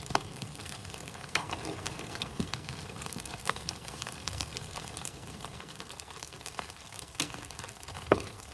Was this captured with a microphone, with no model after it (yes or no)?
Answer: no